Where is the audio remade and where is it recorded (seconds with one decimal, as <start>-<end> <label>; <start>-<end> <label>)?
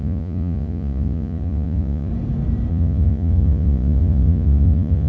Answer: 0.0-2.1 remade; 2.1-2.7 recorded; 2.7-5.1 remade